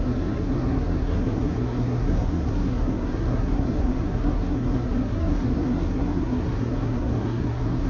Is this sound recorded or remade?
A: remade